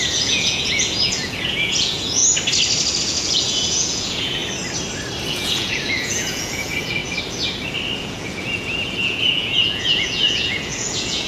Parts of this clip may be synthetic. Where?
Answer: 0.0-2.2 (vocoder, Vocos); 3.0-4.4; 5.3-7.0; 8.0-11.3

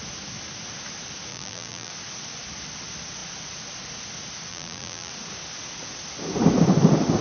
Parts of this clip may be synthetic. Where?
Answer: 1.3-1.9 (vocoder, BigVGAN v2); 4.5-5.1

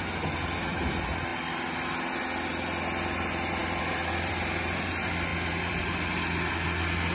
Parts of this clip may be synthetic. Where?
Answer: 3.6-4.4 (vocoder, BigVGAN v2); 5.3-6.1

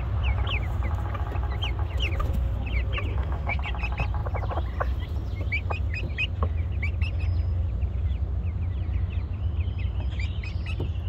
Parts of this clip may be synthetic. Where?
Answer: 3.1-3.6 (autoencoder, DAC-VAE)

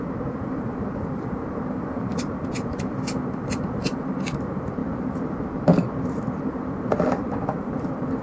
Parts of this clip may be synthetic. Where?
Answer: 0.0-4.8 (vocoder, BigVGAN v2); 6.4-8.2

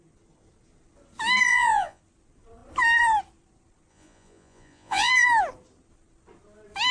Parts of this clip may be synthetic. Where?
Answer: 1.5-2.0 (vocoder, Vocos); 3.9-5.1

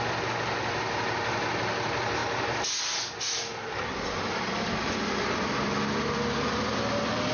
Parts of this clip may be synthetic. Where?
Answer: none

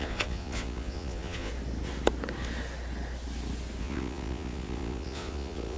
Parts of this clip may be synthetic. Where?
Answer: 0.0-1.5 (vocoder, Vocos); 3.8-5.8